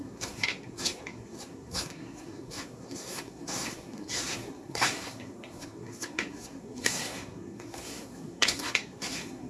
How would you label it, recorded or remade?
remade